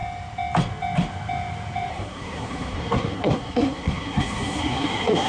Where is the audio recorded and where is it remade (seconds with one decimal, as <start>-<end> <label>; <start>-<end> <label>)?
0.0-1.9 recorded; 1.9-5.3 remade